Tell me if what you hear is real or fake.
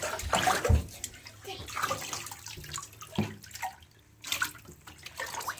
real